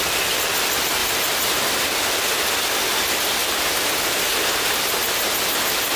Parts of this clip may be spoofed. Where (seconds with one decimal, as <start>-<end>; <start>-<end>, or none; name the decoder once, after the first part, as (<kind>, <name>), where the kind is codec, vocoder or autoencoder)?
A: 1.0-1.6 (vocoder, BigVGAN v2); 3.4-6.0